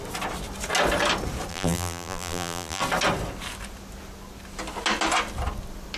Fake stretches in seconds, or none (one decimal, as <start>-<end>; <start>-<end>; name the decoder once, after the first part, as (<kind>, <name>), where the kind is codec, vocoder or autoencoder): 1.5-2.8 (vocoder, BigVGAN v2)